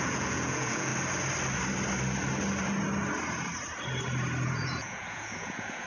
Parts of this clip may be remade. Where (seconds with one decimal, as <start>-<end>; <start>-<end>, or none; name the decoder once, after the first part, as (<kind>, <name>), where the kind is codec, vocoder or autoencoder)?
0.0-0.9 (vocoder, Vocos); 4.4-5.9